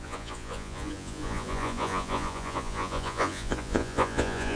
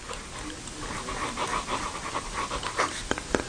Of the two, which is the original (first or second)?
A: second